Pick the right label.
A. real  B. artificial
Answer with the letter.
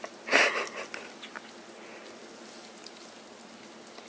A